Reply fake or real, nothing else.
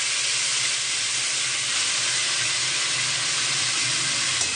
real